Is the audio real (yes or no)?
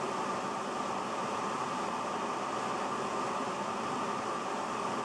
yes